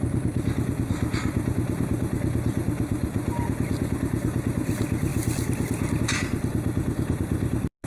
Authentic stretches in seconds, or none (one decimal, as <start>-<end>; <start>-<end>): 0.0-7.9

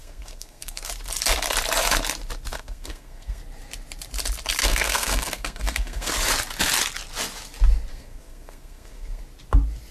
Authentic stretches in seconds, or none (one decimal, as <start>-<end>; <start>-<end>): 0.9-2.5; 3.4-4.6; 6.1-7.9; 9.2-9.9

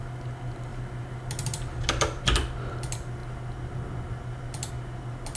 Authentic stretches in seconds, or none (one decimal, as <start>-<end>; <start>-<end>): 0.0-5.4

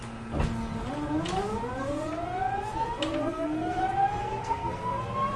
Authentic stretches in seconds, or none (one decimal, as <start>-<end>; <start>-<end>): 0.0-3.2; 3.8-4.2; 5.0-5.4

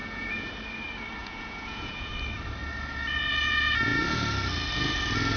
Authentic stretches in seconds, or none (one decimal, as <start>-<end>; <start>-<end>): 0.5-1.2; 2.1-5.4

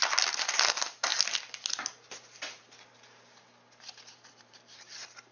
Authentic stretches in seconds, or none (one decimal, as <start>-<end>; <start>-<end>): 1.1-4.3